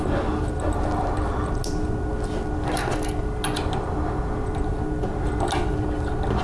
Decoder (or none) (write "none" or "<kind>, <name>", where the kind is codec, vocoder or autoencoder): none